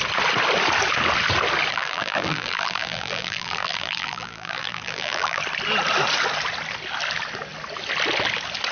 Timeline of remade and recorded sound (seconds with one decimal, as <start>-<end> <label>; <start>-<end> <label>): 0.0-1.7 recorded; 1.7-5.4 remade; 5.4-8.7 recorded